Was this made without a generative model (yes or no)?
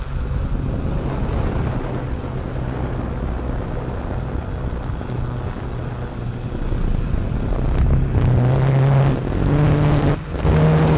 yes